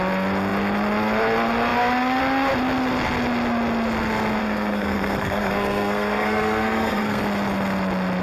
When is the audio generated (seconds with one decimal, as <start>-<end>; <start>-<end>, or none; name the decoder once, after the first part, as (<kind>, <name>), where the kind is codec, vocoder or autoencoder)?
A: 4.4-7.2 (codec, SNAC)